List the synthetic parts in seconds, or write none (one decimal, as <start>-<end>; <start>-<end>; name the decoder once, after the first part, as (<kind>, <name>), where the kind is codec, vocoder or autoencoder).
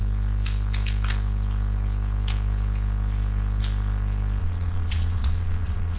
4.4-6.0 (vocoder, Vocos)